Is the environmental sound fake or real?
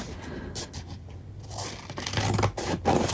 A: fake